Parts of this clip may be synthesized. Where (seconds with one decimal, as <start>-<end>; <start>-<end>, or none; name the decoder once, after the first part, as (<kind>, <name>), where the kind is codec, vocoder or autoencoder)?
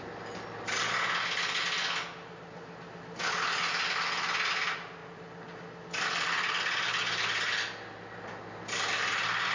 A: none